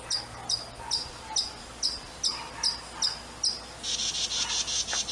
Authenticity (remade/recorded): recorded